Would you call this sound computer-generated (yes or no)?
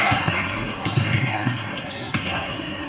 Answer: yes